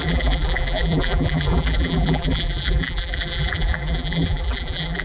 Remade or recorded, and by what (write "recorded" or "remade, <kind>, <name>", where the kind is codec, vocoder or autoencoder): remade, vocoder, BigVGAN v2